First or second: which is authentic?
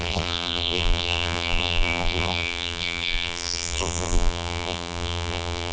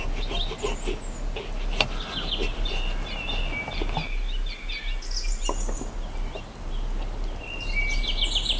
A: second